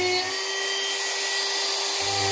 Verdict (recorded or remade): recorded